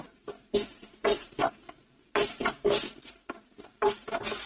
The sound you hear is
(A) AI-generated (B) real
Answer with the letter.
B